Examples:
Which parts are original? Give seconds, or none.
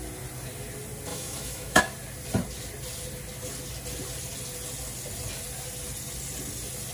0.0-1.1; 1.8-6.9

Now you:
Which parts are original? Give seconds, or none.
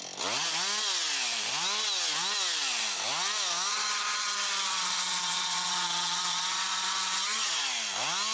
0.0-3.7; 7.5-8.3